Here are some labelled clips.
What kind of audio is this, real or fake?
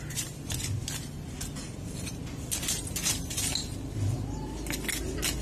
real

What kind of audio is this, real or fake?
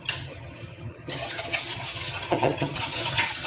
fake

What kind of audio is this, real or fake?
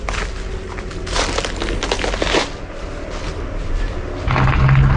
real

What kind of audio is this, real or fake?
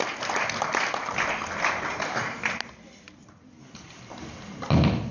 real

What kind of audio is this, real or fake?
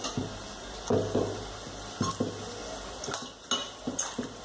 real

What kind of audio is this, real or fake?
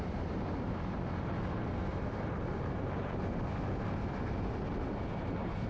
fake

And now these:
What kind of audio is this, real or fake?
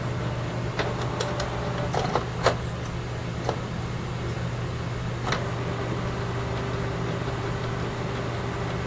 real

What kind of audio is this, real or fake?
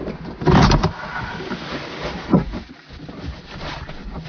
real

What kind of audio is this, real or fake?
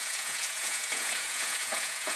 fake